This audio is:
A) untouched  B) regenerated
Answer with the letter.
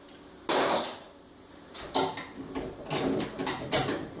A